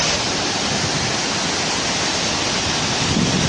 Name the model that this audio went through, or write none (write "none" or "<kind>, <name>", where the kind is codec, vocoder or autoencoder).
vocoder, BigVGAN v2